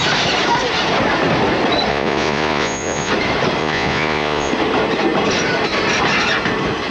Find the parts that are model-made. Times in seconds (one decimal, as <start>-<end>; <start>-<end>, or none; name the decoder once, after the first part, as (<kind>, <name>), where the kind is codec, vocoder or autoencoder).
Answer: 1.9-3.1 (vocoder, Vocos); 3.6-4.5